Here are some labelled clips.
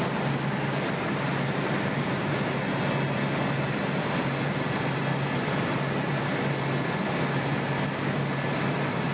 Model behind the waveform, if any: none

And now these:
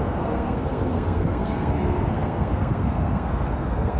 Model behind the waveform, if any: codec, SNAC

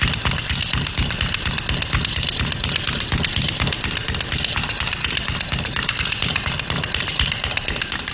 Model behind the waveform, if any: none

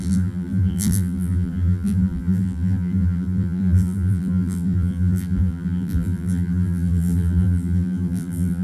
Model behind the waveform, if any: vocoder, BigVGAN v2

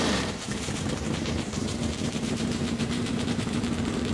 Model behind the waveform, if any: vocoder, BigVGAN v2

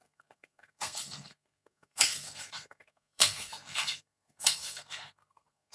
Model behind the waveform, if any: codec, SNAC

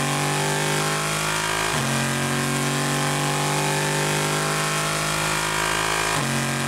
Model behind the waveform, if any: none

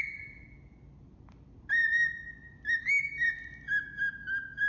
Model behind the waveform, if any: none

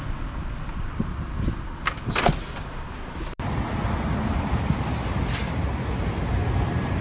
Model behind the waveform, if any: none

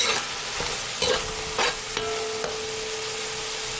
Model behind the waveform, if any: none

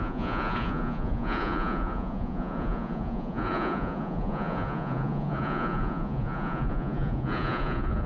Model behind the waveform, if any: vocoder, Vocos